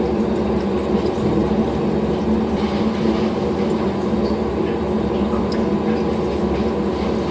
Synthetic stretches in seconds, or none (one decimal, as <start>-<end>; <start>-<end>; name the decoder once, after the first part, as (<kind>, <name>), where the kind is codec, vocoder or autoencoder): none